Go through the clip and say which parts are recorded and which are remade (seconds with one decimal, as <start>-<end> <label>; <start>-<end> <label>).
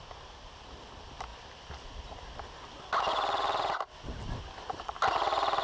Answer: 0.0-1.3 recorded; 1.3-4.7 remade; 4.7-5.6 recorded